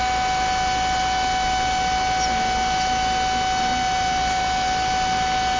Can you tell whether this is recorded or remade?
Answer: recorded